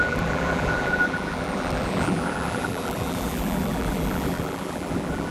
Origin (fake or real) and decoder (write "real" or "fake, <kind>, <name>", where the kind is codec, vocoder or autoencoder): fake, vocoder, BigVGAN v2